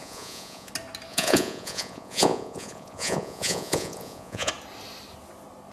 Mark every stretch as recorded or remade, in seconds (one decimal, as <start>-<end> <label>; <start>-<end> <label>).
0.0-0.7 remade; 0.7-1.1 recorded; 1.1-4.5 remade; 4.5-5.7 recorded